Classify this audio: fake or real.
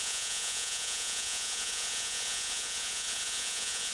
fake